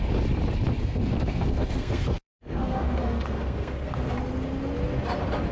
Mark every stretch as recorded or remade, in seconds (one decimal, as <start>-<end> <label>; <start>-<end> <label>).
0.0-0.8 recorded; 0.8-4.1 remade; 4.1-5.5 recorded

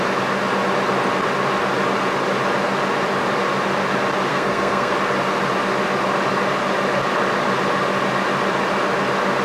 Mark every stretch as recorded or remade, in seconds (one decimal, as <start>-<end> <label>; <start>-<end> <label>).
0.0-4.3 recorded; 4.3-4.9 remade; 4.9-9.4 recorded

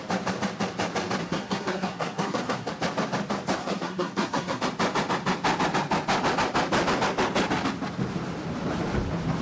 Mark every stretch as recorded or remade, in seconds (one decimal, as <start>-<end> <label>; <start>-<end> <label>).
0.0-1.2 recorded; 1.2-2.7 remade; 2.7-3.6 recorded; 3.6-4.6 remade; 4.6-9.4 recorded

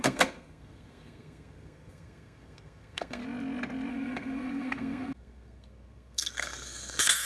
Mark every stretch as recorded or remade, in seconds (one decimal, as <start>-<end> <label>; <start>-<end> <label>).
0.0-3.2 remade; 3.2-3.9 recorded; 3.9-7.3 remade

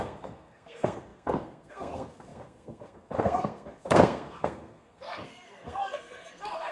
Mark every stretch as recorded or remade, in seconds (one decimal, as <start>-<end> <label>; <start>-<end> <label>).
0.0-6.7 remade

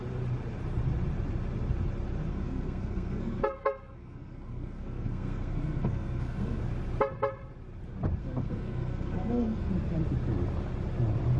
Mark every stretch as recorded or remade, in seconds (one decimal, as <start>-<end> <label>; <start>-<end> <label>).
0.0-2.3 recorded; 2.3-6.6 remade; 6.6-8.2 recorded; 8.2-9.7 remade; 9.7-11.4 recorded